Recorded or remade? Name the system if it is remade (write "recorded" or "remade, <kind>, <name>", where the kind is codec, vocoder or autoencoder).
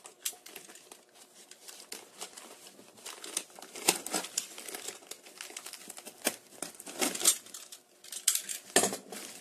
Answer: recorded